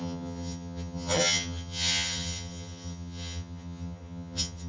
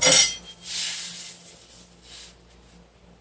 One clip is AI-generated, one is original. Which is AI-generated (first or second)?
first